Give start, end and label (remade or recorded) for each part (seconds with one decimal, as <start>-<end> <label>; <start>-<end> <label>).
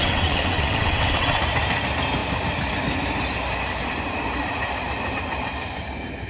0.0-1.4 remade; 1.4-6.3 recorded